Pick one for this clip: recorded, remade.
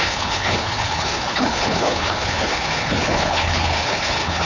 remade